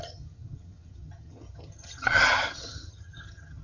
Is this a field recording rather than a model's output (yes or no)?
no